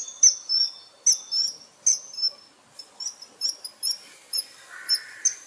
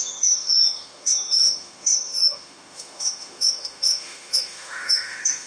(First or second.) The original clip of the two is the first